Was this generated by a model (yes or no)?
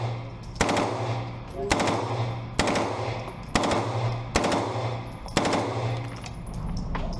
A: no